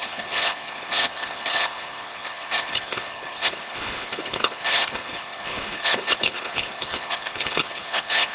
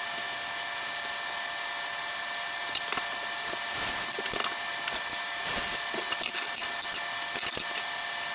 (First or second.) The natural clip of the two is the second